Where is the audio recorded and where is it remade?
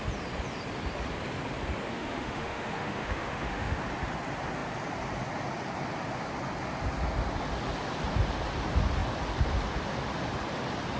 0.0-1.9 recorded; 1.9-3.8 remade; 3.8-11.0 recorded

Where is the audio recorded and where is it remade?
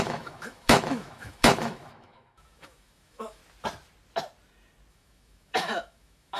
0.0-3.4 remade; 3.4-4.9 recorded; 4.9-6.4 remade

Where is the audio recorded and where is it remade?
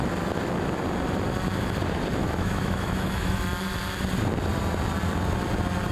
0.0-2.2 recorded; 2.2-3.4 remade; 3.4-5.9 recorded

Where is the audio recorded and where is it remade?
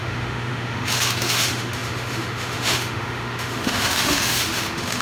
0.0-5.0 remade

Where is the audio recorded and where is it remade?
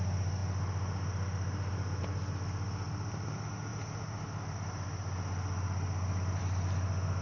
0.0-7.2 recorded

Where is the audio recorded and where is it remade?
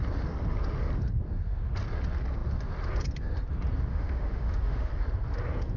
0.0-3.9 recorded; 3.9-4.9 remade; 4.9-5.8 recorded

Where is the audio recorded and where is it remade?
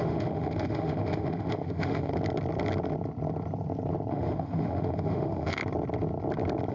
0.0-2.1 remade; 2.1-4.1 recorded; 4.1-5.6 remade; 5.6-6.7 recorded